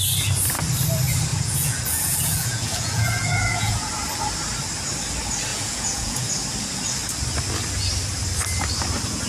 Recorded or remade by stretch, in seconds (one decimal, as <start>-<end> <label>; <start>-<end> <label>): 0.0-1.3 recorded; 1.3-3.9 remade; 3.9-5.5 recorded; 5.5-6.3 remade; 6.3-9.3 recorded